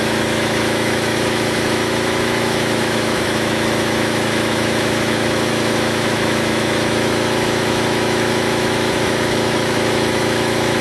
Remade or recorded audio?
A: remade